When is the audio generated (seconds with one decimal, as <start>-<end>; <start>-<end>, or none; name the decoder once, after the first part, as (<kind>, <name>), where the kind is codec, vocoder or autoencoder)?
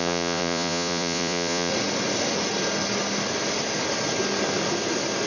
0.0-1.7 (vocoder, Vocos)